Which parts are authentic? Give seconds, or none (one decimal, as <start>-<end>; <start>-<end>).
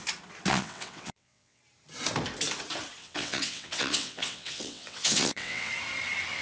0.0-0.5; 1.6-3.0; 5.7-6.4